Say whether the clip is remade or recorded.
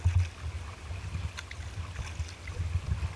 recorded